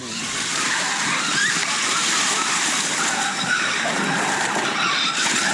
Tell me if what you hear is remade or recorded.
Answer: remade